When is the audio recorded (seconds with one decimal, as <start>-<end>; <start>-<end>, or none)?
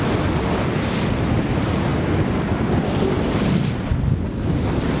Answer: 0.0-5.0